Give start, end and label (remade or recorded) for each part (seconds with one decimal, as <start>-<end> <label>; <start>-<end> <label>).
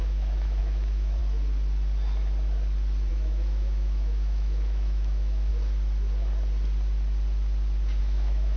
0.0-1.2 remade; 1.2-3.1 recorded; 3.1-5.5 remade; 5.5-8.0 recorded; 8.0-8.6 remade